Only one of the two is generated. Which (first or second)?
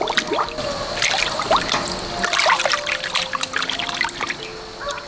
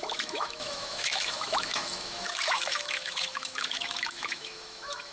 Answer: second